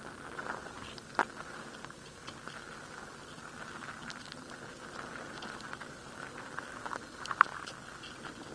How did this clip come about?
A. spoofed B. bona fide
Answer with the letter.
B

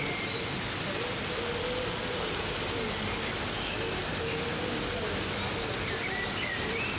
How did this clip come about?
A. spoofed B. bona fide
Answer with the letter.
B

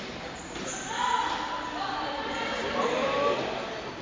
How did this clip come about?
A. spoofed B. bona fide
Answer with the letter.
A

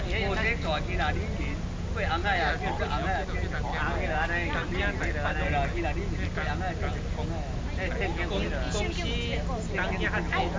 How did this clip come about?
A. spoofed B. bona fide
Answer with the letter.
B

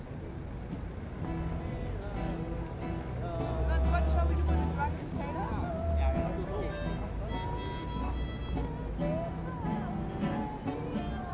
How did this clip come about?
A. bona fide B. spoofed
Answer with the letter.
A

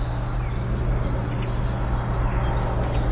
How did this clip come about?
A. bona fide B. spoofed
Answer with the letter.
A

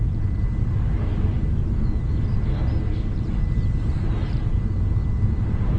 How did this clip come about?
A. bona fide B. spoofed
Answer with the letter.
A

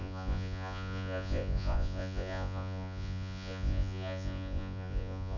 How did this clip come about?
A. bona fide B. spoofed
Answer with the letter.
B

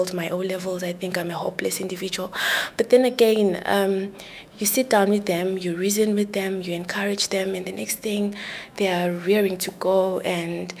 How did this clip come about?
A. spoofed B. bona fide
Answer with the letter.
A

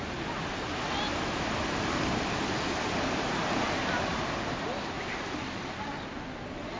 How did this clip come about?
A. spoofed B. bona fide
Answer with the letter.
B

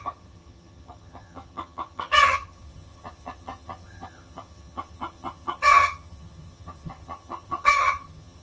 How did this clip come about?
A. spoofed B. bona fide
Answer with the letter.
A